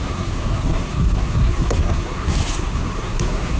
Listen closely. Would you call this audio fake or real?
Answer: fake